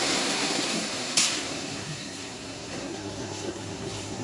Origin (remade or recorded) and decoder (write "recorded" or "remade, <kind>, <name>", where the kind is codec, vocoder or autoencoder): remade, codec, SNAC